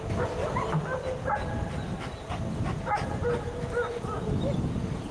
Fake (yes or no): no